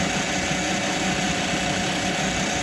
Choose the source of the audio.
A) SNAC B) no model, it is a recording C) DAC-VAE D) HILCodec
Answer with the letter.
B